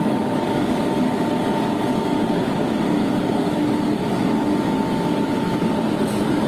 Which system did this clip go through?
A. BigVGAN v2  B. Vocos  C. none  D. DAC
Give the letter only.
D